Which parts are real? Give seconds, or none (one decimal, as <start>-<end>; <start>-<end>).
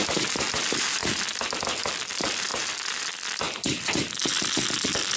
0.0-5.2